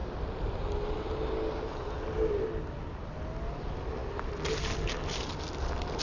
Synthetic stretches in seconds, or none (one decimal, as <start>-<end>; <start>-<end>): none